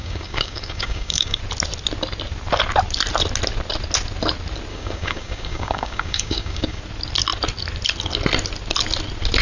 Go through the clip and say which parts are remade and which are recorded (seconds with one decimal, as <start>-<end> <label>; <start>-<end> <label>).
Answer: 0.0-1.4 remade; 1.4-4.7 recorded; 4.7-6.8 remade; 6.8-9.4 recorded